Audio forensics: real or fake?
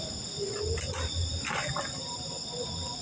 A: real